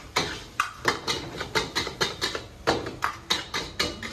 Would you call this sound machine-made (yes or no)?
no